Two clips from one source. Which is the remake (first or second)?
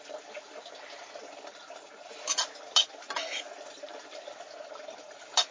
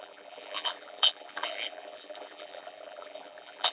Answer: second